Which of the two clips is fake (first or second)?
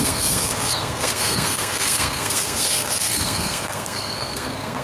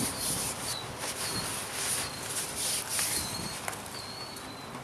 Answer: first